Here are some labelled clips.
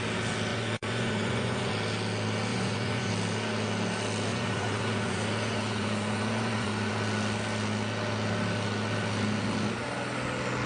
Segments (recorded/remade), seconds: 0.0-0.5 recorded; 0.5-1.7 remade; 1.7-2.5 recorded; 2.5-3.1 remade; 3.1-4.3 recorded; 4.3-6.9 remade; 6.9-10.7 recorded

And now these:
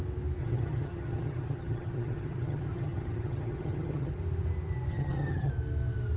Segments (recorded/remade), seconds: 0.0-0.4 recorded; 0.4-4.1 remade; 4.1-4.9 recorded; 4.9-5.5 remade; 5.5-6.2 recorded

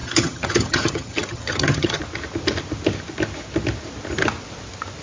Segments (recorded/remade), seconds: 0.0-2.0 remade; 2.0-5.0 recorded

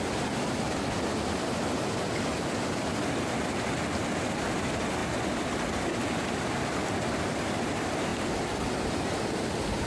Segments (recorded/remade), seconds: 0.0-9.9 recorded

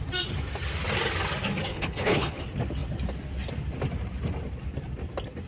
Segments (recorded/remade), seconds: 0.0-1.7 recorded; 1.7-2.4 remade; 2.4-5.5 recorded

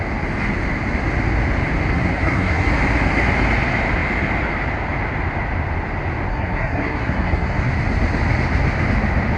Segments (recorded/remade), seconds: 0.0-1.9 recorded; 1.9-2.7 remade; 2.7-6.3 recorded; 6.3-7.7 remade; 7.7-9.4 recorded

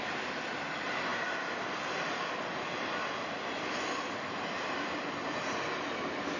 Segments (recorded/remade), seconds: 0.0-6.4 recorded

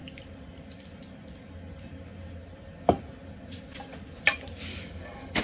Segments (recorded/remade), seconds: 0.0-4.7 recorded; 4.7-5.4 remade